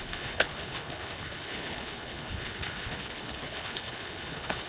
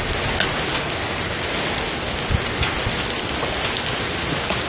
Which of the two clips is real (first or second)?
second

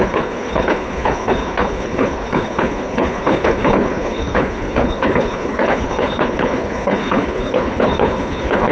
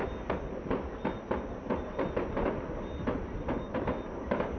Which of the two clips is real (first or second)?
second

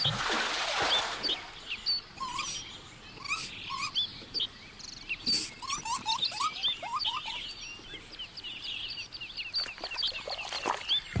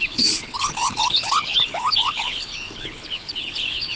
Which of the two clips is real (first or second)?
first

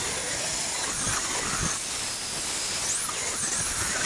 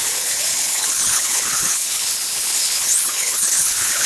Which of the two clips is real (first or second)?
first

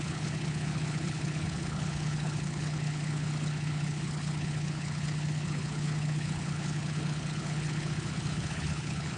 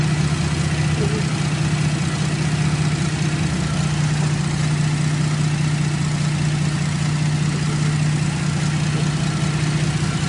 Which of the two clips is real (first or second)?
second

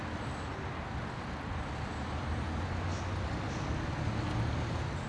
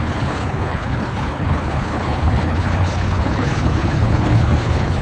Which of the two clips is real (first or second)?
first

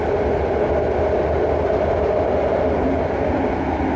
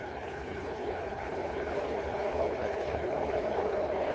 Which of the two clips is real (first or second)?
first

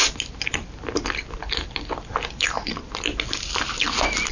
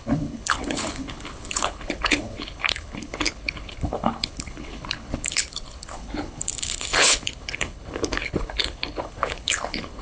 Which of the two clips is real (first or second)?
first